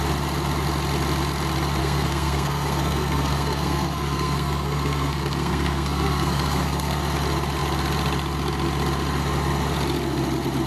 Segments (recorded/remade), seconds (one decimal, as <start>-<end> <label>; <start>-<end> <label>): 0.0-1.8 recorded; 1.8-7.0 remade; 7.0-10.7 recorded